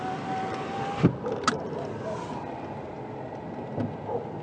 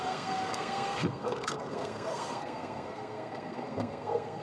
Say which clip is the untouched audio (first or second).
first